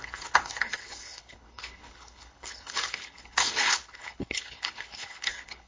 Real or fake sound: fake